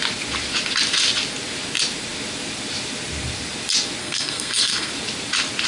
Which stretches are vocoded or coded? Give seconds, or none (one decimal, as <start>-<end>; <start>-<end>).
4.0-4.9